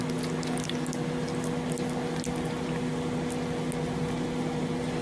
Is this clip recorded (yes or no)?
yes